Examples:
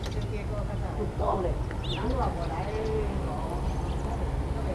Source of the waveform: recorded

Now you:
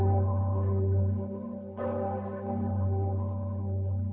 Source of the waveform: remade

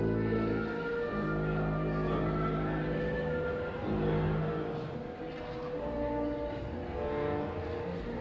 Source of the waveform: recorded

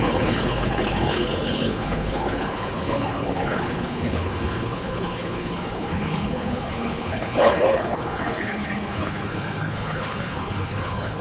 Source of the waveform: remade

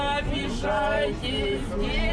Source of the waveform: recorded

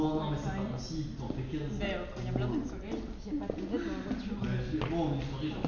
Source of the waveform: recorded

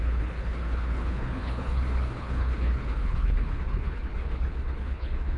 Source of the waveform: remade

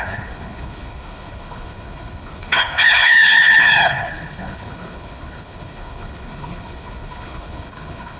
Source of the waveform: remade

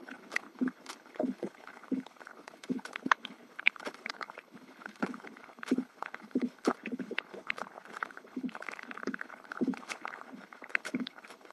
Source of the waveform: remade